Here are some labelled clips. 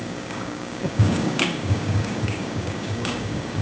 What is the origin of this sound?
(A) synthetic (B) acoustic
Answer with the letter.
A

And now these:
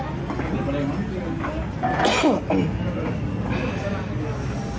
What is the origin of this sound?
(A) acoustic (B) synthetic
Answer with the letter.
A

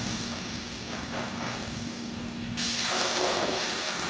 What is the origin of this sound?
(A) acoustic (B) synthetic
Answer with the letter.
B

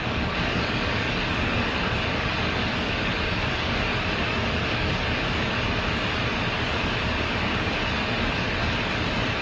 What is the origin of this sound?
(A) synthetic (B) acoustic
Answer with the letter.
A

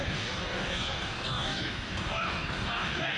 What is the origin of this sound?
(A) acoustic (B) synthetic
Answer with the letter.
B